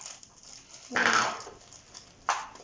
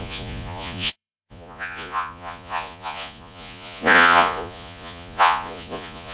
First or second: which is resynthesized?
second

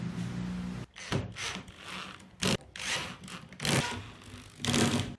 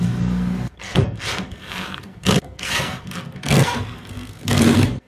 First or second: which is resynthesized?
second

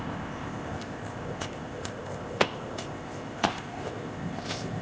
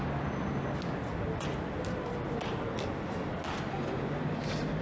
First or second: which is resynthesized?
first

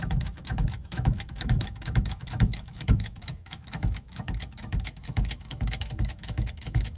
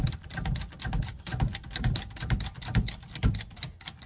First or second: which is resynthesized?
first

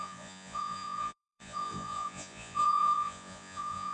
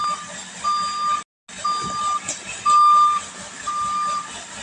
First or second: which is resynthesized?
first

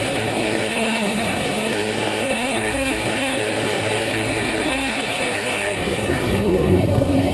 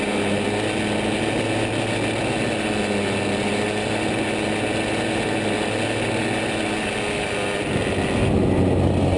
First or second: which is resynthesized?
first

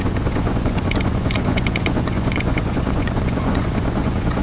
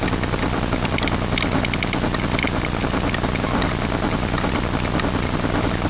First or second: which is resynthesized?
first